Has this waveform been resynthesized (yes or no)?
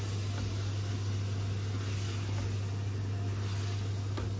no